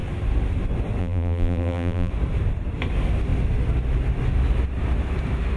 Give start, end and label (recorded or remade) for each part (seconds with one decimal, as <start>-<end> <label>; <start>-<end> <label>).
0.0-1.0 recorded; 1.0-2.1 remade; 2.1-5.6 recorded